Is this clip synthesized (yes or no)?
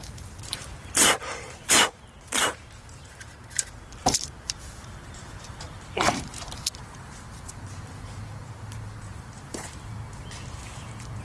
yes